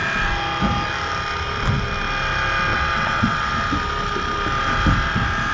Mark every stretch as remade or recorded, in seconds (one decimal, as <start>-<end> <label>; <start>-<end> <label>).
0.0-2.7 recorded; 2.7-3.5 remade; 3.5-5.5 recorded